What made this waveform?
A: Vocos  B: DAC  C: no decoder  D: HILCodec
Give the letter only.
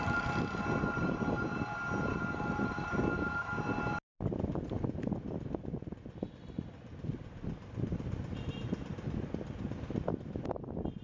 C